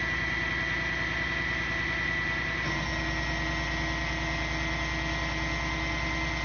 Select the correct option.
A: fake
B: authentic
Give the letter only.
B